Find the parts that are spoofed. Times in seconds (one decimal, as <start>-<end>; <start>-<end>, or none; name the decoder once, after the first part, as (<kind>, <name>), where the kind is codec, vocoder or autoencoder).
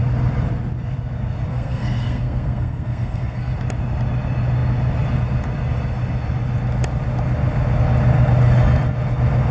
1.5-3.5 (codec, SNAC)